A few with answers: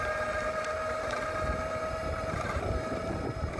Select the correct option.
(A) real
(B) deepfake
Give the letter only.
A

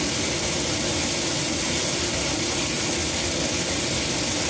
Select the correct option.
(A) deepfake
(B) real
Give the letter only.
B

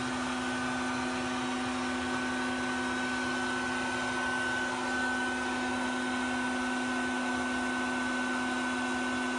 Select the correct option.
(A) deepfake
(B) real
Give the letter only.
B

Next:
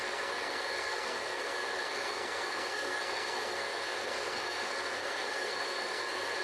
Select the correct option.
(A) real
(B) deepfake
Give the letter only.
B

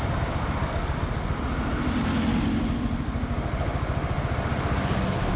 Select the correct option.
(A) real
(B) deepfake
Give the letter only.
A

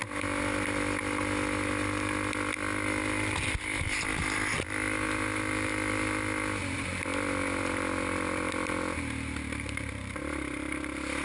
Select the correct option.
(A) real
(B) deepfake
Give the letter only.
A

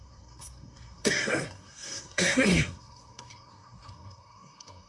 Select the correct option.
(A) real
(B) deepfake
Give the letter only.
B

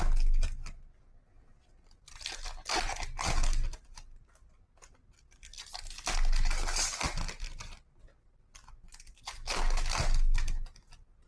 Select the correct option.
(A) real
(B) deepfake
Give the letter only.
A